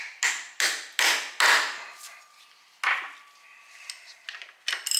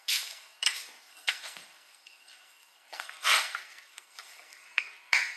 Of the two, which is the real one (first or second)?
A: first